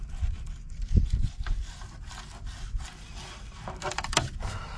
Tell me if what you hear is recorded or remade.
recorded